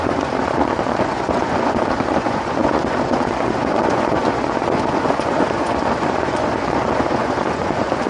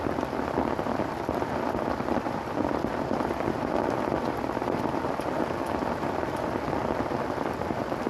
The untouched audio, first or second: second